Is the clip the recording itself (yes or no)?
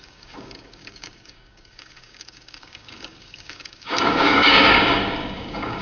no